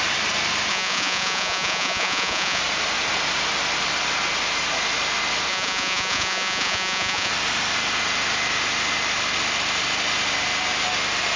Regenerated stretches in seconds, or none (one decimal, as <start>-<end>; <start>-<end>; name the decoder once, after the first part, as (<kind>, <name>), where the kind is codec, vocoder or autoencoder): 0.7-2.6 (vocoder, Vocos); 5.5-7.3